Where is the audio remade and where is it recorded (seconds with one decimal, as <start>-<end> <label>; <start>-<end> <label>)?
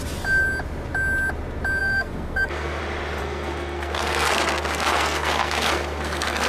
0.0-1.8 recorded; 1.8-2.8 remade; 2.8-3.2 recorded; 3.2-6.5 remade